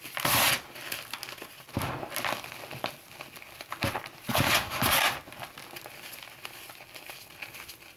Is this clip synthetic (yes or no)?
no